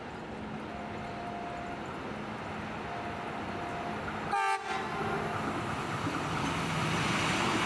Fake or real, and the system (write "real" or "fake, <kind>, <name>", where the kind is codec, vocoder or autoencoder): real